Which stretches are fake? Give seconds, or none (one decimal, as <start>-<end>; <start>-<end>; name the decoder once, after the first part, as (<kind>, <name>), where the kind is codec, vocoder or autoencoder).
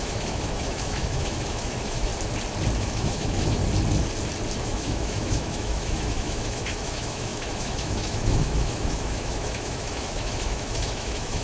0.0-2.1 (autoencoder, DAC-VAE); 2.8-3.6; 4.6-11.4